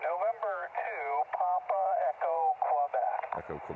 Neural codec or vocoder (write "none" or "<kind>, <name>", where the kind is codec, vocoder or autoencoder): none